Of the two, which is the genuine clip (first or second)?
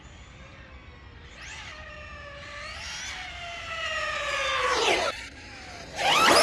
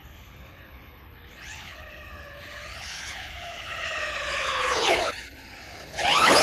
first